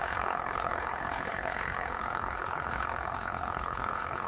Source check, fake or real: fake